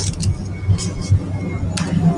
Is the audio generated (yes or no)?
no